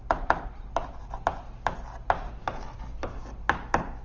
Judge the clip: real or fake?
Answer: real